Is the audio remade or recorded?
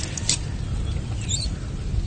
recorded